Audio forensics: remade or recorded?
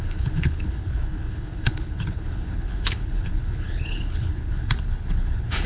remade